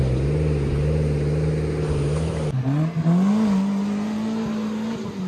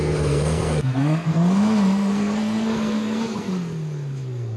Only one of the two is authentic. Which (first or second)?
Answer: first